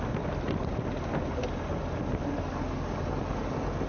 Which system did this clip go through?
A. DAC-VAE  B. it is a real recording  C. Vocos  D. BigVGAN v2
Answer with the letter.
B